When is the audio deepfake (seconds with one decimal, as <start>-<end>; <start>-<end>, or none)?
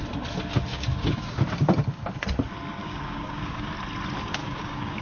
0.7-1.4; 2.8-3.7; 4.4-5.0